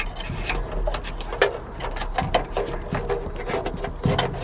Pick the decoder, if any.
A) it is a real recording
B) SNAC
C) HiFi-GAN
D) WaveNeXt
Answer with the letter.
A